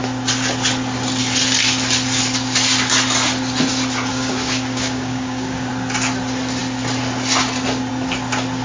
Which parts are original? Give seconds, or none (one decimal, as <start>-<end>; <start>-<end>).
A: 0.0-4.1; 5.7-8.6